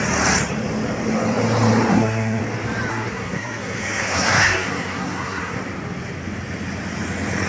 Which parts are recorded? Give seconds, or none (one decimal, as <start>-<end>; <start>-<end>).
0.0-1.9; 2.4-2.9; 5.6-7.5